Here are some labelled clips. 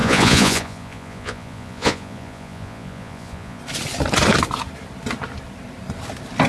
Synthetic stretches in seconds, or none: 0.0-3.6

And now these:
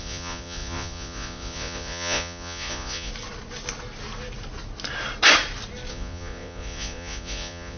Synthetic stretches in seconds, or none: 0.0-3.1; 5.9-7.8

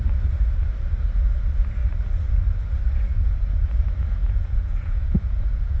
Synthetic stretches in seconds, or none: 3.1-3.7; 4.2-5.8

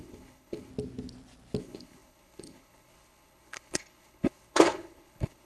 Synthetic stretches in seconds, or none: 0.0-0.7; 1.6-5.5